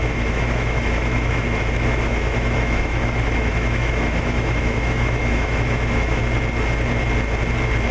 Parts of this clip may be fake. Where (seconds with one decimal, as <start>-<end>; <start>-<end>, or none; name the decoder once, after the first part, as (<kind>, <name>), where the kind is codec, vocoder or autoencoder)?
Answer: 0.0-6.2 (autoencoder, DAC-VAE)